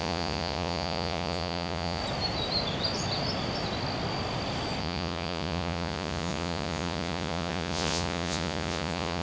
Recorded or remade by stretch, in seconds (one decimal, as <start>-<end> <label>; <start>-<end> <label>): 0.0-2.0 remade; 2.0-4.8 recorded; 4.8-9.2 remade